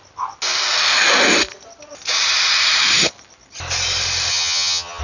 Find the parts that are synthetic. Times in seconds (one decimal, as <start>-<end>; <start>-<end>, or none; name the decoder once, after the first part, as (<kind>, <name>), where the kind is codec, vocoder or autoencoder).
4.3-5.0 (vocoder, HiFi-GAN)